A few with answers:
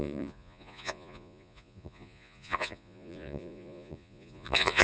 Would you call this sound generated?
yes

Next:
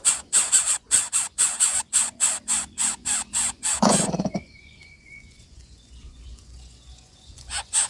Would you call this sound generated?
yes